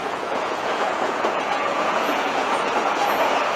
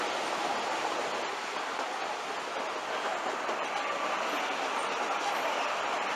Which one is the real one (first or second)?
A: second